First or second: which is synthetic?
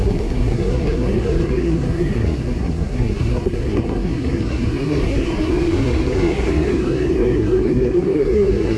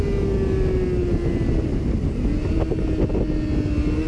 first